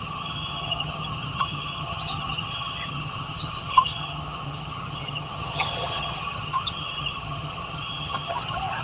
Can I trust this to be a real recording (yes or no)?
no